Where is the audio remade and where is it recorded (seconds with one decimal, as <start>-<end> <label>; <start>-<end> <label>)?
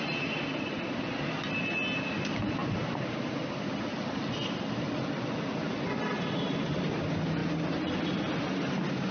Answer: 0.0-2.6 recorded; 2.6-3.4 remade; 3.4-9.1 recorded